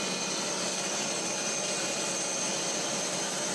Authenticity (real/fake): real